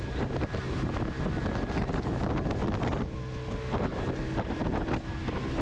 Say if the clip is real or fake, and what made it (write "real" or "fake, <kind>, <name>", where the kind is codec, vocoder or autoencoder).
real